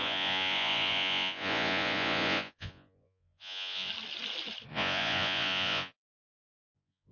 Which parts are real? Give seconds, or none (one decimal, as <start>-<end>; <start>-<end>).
3.9-4.7